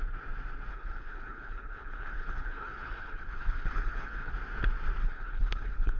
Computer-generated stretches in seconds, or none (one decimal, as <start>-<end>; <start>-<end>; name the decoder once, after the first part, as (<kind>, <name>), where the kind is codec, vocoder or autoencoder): 0.7-4.3 (codec, HILCodec); 5.0-6.0